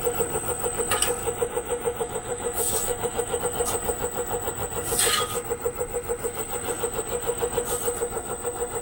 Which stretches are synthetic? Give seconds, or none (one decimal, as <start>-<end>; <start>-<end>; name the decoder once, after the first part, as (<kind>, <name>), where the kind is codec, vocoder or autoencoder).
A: 1.2-3.4 (autoencoder, DAC-VAE)